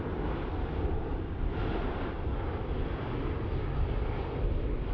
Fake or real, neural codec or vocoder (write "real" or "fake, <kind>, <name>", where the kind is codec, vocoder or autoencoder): real